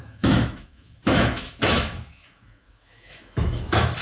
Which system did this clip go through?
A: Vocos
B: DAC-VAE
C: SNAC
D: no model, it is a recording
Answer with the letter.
B